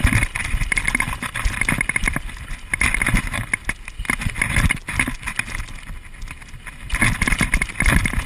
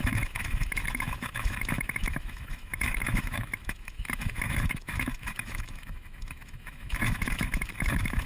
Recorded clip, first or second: first